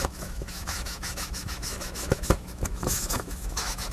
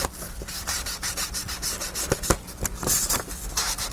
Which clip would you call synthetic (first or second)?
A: first